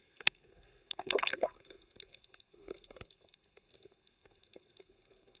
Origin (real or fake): fake